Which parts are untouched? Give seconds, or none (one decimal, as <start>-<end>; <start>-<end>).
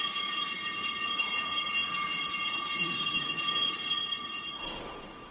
none